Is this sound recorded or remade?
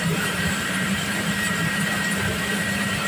remade